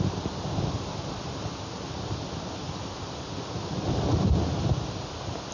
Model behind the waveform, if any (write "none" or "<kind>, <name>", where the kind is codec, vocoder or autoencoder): none